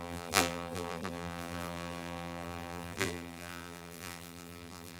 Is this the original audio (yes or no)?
no